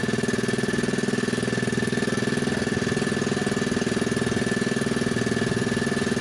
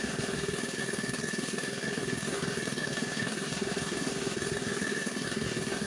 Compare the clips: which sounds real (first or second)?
first